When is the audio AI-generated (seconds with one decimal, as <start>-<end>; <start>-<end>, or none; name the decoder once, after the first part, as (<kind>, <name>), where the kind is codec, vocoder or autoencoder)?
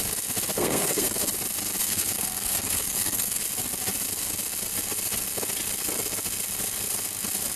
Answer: 0.6-1.3 (codec, SNAC); 1.8-3.4